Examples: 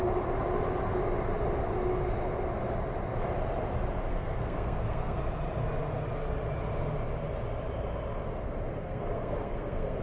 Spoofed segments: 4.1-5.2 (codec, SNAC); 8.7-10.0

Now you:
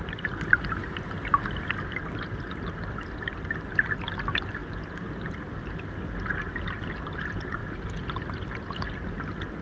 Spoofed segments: none

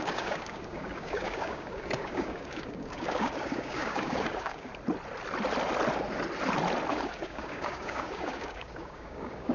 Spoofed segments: 0.0-4.7 (codec, DAC); 6.9-9.5

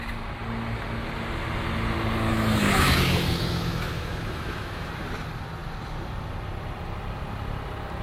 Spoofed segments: 2.3-4.9 (autoencoder, DAC-VAE)

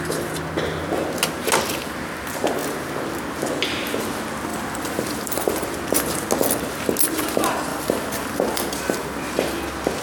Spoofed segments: 4.5-5.8 (vocoder, BigVGAN v2); 7.7-9.6

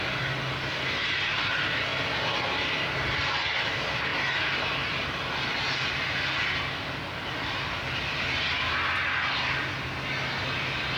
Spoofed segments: none

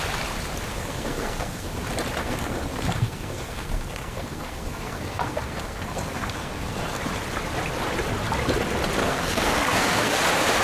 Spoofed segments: 0.7-1.7 (codec, SNAC); 2.2-7.0; 9.0-10.2

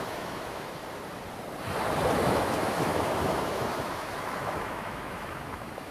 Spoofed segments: 0.0-0.8 (autoencoder, DAC-VAE); 2.3-5.9